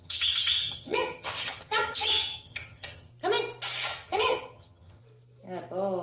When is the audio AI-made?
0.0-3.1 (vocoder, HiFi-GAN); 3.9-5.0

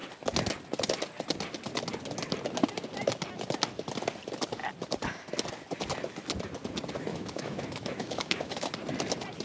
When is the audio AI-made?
7.1-8.7 (autoencoder, DAC-VAE)

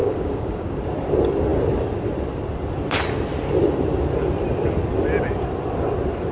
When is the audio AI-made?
0.0-0.8 (codec, DAC)

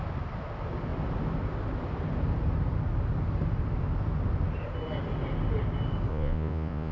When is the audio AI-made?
6.1-6.9 (vocoder, Vocos)